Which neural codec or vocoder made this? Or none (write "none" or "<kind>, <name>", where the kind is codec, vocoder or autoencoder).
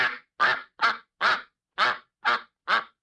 none